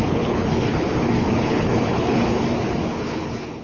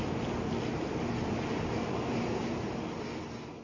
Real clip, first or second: second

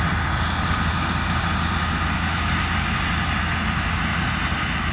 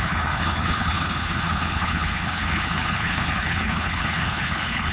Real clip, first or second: first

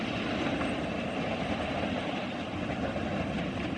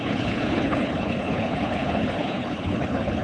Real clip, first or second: first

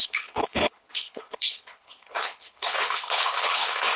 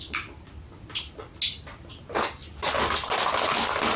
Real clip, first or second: second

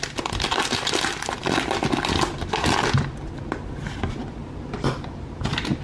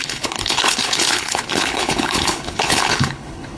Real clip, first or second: first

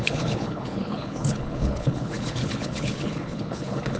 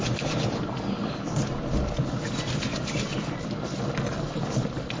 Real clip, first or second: second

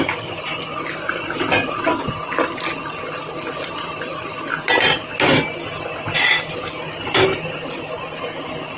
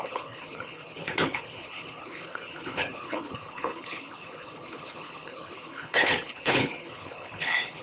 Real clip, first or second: first